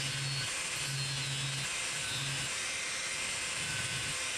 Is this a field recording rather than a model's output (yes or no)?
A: yes